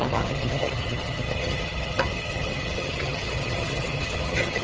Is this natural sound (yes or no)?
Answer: no